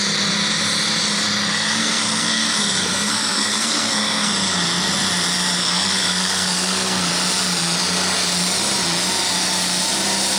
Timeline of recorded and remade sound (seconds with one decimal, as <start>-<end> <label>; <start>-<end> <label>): 0.0-1.5 recorded; 1.5-4.3 remade; 4.3-5.6 recorded; 5.6-7.1 remade; 7.1-10.4 recorded